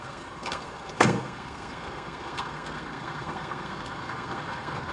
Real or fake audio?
fake